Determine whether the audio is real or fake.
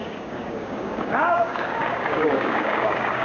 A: fake